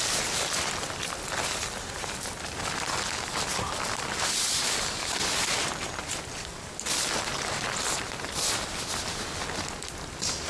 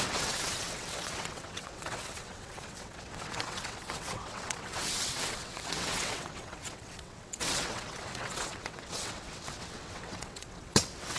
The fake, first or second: second